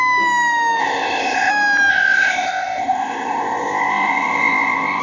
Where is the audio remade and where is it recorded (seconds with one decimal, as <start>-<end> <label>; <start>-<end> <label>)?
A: 0.0-0.8 recorded; 0.8-1.5 remade; 1.5-1.9 recorded; 1.9-5.0 remade